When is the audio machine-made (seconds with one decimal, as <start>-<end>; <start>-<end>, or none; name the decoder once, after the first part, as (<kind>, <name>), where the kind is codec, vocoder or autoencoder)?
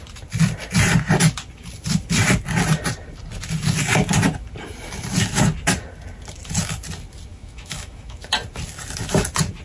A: 7.3-8.3 (autoencoder, DAC-VAE)